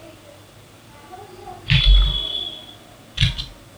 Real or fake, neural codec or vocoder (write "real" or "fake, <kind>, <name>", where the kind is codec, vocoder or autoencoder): real